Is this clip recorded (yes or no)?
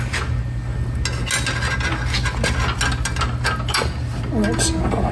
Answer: yes